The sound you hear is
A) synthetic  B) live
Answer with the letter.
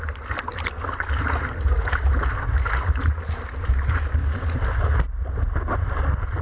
B